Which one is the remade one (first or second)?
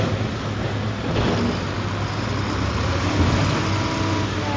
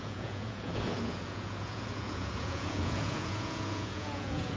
second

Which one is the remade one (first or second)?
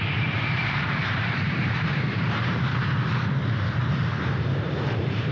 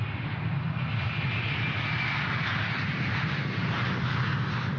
first